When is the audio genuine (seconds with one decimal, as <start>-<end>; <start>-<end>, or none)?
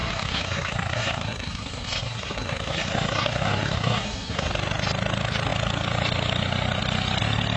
4.5-7.6